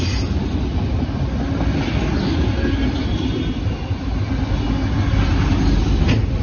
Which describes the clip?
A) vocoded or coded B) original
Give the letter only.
B